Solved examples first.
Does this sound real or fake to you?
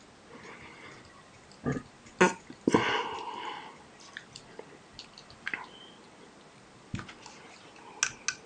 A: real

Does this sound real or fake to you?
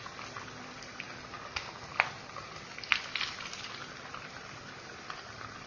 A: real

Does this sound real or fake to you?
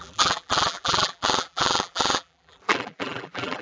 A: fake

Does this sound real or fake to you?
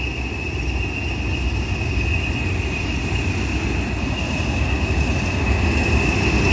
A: real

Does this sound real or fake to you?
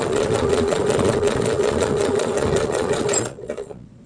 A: fake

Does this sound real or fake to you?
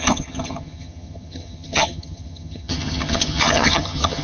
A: fake